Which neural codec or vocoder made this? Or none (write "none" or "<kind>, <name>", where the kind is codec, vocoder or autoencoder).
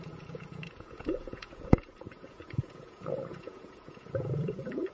vocoder, Vocos